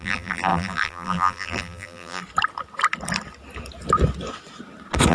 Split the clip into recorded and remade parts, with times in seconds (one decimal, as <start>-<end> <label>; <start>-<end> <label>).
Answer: 0.0-2.2 remade; 2.2-5.1 recorded